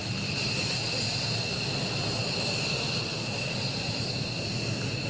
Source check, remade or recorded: recorded